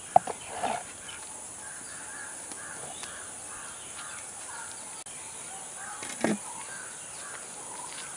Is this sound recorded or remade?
recorded